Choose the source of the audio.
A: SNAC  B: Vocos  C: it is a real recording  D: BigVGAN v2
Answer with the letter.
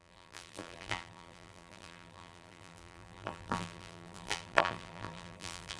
D